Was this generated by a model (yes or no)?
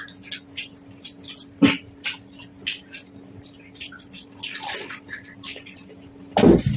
no